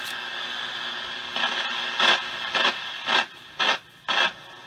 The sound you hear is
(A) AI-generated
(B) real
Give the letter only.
B